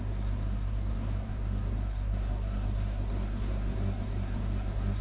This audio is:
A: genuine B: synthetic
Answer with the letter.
B